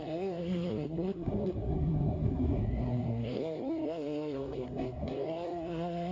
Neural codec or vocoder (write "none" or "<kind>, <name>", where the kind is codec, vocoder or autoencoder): codec, SNAC